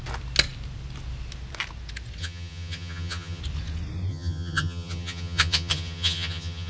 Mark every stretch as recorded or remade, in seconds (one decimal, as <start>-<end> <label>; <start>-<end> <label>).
0.0-2.2 recorded; 2.2-3.4 remade; 3.4-4.1 recorded; 4.1-6.7 remade